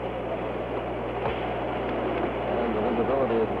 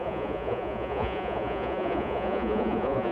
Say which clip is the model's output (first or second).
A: second